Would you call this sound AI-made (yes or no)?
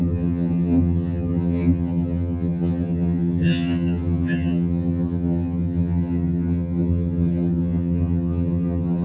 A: yes